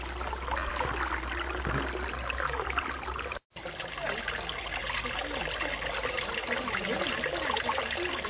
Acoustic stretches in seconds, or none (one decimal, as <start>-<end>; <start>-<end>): 0.0-8.3